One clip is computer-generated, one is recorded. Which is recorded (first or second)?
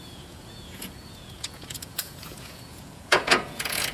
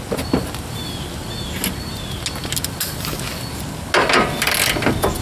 second